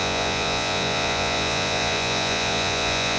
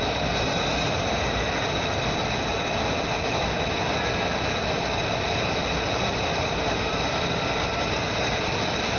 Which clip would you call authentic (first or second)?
second